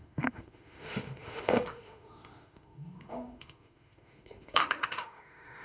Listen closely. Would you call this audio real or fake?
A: fake